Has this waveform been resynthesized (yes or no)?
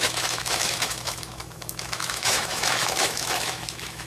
yes